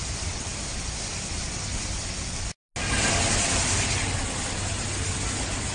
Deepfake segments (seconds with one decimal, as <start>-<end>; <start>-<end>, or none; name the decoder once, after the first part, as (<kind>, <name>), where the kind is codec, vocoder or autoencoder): none